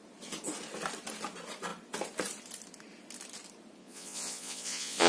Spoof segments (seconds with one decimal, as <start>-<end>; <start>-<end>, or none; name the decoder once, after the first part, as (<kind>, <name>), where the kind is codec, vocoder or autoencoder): 3.8-5.1 (vocoder, Vocos)